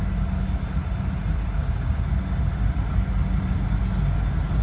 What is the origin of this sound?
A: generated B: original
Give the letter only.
B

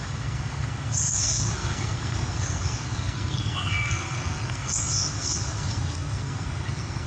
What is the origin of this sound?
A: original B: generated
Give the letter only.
B